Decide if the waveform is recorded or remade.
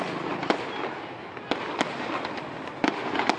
recorded